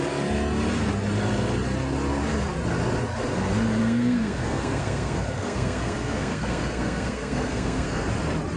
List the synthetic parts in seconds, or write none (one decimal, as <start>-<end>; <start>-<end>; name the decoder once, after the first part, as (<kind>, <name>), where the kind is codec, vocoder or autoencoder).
3.8-8.1 (codec, SNAC)